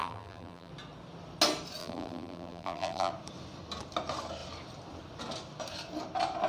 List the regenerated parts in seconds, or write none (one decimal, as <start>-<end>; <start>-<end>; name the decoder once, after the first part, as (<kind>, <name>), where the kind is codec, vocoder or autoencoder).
0.0-0.7 (vocoder, BigVGAN v2); 1.8-3.1